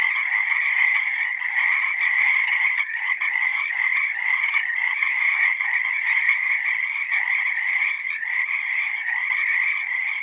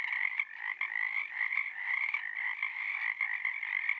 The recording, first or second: second